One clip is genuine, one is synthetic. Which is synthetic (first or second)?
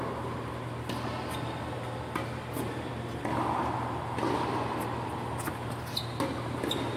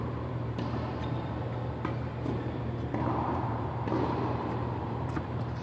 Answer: second